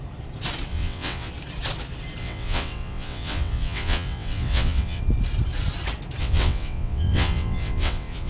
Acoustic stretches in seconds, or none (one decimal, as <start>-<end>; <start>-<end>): 0.0-0.7; 1.3-2.2; 5.0-6.2